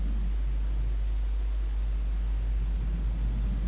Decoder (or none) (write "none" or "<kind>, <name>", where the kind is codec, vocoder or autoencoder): none